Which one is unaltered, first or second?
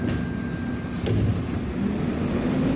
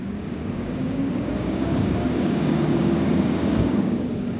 first